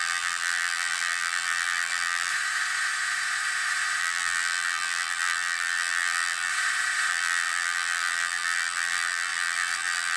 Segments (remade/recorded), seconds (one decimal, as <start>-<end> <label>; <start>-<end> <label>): 0.0-2.3 remade; 2.3-4.0 recorded; 4.0-6.5 remade; 6.5-7.1 recorded; 7.1-10.2 remade